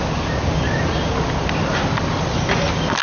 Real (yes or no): yes